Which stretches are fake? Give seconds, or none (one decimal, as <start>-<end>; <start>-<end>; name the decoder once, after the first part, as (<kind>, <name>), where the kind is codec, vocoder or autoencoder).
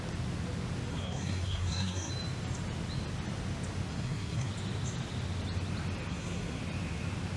0.9-2.1 (codec, SNAC); 3.9-4.5; 6.1-6.6